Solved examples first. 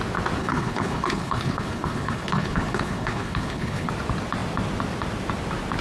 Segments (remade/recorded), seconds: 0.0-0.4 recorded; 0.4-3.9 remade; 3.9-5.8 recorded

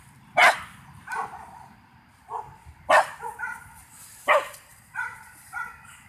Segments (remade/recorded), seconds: 0.0-6.1 recorded

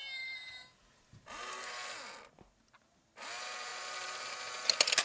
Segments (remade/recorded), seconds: 0.0-5.0 recorded

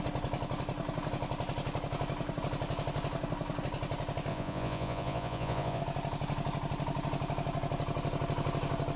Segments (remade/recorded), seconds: 0.0-4.3 recorded; 4.3-5.8 remade; 5.8-9.0 recorded